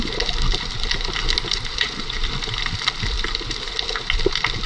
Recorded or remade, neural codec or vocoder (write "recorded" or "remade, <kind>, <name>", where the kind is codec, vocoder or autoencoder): recorded